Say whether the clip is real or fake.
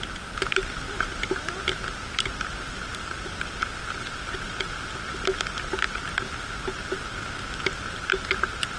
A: real